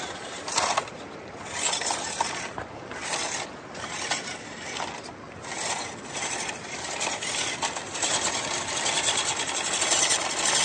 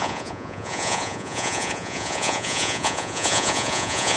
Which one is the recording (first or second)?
first